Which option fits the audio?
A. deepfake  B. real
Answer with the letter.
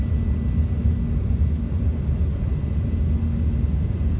B